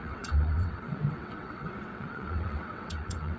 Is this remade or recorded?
remade